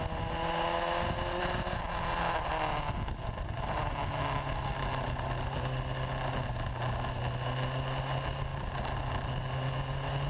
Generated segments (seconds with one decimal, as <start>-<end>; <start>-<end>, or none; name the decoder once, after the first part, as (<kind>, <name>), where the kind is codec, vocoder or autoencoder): none